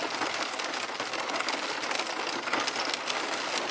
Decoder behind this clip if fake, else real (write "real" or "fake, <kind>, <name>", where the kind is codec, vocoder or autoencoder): real